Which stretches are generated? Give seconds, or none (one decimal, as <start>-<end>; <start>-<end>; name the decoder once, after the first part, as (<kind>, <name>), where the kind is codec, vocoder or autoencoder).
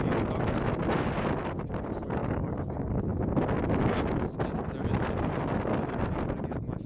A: none